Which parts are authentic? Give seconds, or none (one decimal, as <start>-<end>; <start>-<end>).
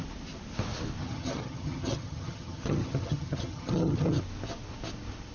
0.0-1.0; 4.2-5.3